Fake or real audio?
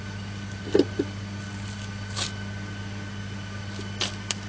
real